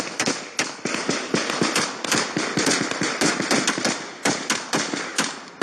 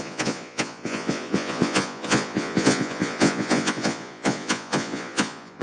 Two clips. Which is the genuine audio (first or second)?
first